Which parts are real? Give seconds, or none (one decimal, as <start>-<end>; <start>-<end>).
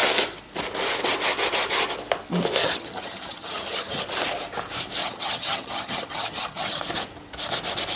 0.0-2.6; 4.0-5.0; 6.8-8.0